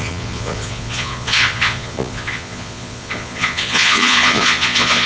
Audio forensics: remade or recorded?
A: remade